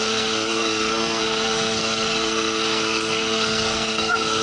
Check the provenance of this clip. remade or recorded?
remade